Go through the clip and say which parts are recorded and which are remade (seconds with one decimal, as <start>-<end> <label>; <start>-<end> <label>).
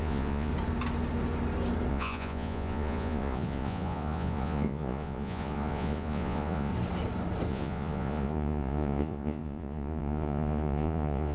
0.0-0.5 remade; 0.5-1.9 recorded; 1.9-6.7 remade; 6.7-7.5 recorded; 7.5-11.3 remade